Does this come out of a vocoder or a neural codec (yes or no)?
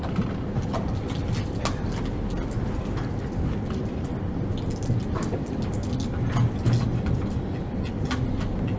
no